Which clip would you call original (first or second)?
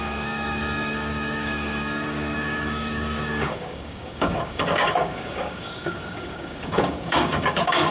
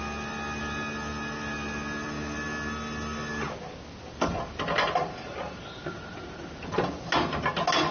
second